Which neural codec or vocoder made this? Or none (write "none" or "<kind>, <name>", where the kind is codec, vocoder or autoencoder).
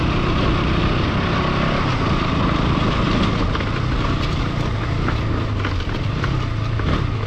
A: none